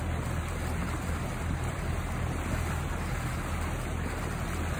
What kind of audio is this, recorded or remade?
recorded